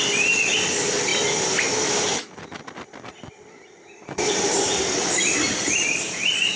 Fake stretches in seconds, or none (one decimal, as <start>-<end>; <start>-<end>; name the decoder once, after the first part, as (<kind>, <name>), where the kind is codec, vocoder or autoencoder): none